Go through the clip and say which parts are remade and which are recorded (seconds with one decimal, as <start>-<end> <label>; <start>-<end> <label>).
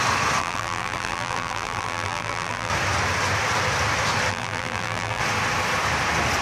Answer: 0.0-0.4 recorded; 0.4-2.7 remade; 2.7-4.3 recorded; 4.3-5.2 remade; 5.2-6.4 recorded